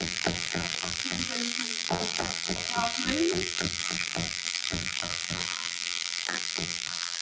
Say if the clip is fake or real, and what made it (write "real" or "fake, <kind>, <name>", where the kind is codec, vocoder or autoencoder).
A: fake, vocoder, BigVGAN v2